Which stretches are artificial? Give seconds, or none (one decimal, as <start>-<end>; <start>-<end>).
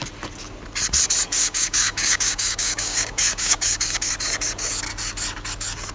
1.4-4.1